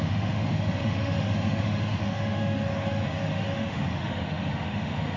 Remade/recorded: remade